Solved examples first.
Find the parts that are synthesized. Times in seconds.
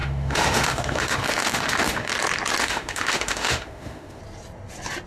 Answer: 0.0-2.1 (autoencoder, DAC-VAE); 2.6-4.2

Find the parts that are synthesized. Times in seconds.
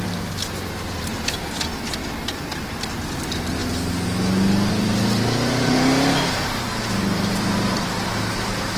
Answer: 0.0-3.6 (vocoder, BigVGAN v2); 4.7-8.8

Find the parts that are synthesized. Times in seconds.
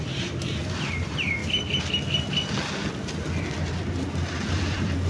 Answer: 0.0-1.4 (vocoder, BigVGAN v2); 4.5-5.1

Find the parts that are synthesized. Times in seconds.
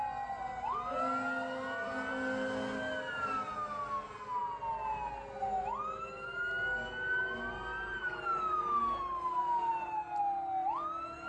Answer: none